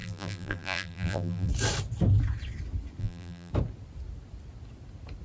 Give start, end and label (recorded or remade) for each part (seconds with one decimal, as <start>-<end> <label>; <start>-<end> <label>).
0.0-1.5 remade; 1.5-3.0 recorded; 3.0-3.5 remade; 3.5-5.2 recorded